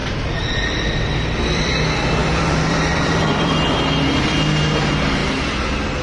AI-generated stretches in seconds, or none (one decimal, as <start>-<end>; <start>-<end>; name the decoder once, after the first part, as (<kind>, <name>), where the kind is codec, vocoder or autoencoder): 0.0-1.7 (vocoder, BigVGAN v2); 2.2-3.8